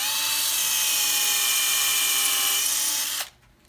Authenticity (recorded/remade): recorded